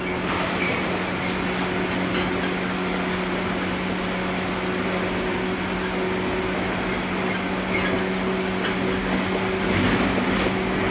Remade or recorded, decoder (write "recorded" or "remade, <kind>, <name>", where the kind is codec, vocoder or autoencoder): recorded